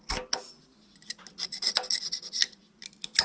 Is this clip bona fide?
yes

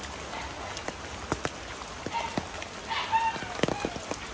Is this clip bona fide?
yes